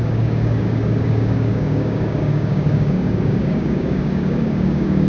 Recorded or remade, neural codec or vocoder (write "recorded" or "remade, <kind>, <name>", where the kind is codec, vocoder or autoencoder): remade, codec, DAC